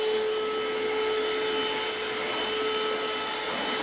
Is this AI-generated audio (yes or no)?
no